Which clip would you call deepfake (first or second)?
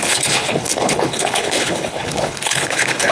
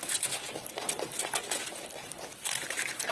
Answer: first